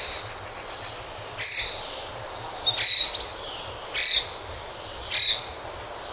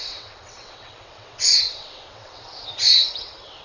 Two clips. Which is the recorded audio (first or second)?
first